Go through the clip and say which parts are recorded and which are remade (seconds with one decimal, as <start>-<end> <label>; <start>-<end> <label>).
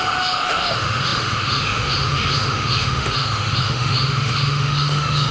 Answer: 0.0-5.3 remade